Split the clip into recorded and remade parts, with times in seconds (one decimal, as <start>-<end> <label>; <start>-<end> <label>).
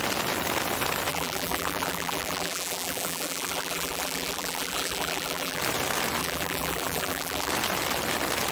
0.0-1.1 recorded; 1.1-5.6 remade; 5.6-6.2 recorded; 6.2-7.5 remade; 7.5-8.5 recorded